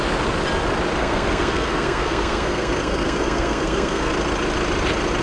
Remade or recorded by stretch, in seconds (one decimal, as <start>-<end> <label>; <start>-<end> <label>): 0.0-1.0 recorded; 1.0-4.1 remade; 4.1-5.2 recorded